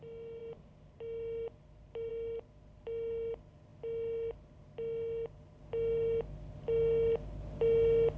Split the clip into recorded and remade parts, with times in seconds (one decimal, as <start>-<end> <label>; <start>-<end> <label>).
0.0-8.2 recorded